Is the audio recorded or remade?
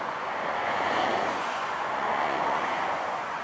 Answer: remade